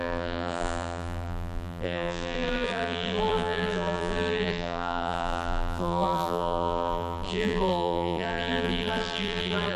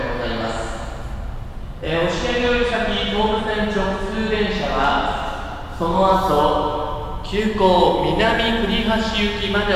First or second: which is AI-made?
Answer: first